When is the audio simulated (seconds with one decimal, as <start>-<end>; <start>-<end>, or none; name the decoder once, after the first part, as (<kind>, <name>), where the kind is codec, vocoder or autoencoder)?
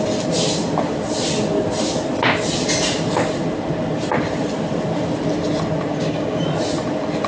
5.9-6.4 (codec, DAC)